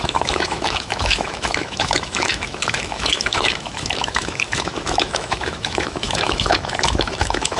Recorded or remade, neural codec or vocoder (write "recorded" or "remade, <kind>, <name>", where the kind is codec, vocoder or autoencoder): remade, autoencoder, DAC-VAE